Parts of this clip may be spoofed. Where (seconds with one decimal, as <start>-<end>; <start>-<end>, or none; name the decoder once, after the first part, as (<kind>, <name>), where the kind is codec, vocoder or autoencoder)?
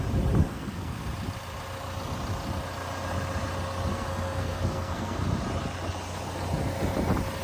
0.4-1.0 (codec, SNAC); 3.9-5.2